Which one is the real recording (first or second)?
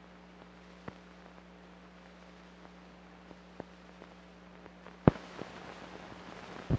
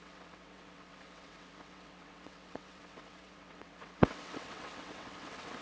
first